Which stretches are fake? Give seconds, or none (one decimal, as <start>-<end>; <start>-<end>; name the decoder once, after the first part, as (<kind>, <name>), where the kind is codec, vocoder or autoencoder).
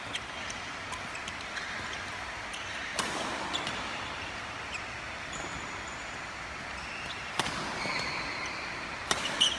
none